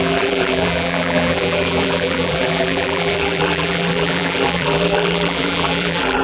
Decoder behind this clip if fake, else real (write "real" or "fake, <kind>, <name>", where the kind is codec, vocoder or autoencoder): fake, vocoder, BigVGAN v2